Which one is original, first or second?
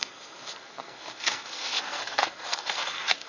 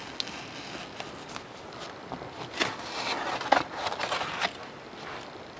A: second